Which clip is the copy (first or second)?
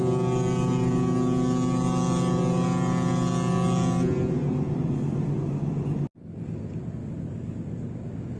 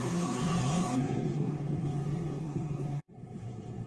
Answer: second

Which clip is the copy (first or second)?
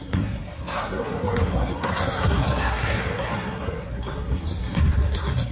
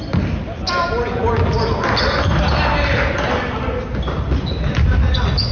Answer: first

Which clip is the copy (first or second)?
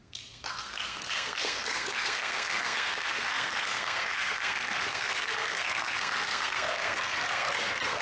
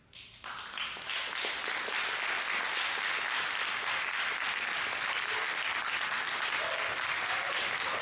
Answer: first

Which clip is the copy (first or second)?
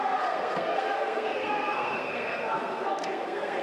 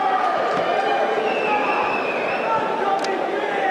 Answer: first